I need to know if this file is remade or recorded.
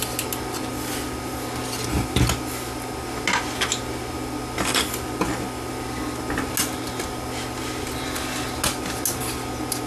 recorded